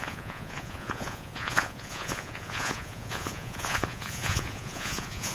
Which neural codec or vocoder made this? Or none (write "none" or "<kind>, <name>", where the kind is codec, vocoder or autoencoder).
vocoder, Vocos